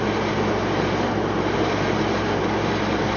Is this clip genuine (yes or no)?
yes